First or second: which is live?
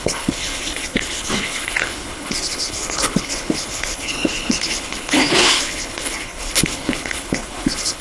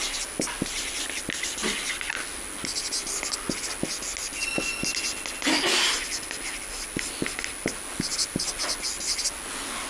second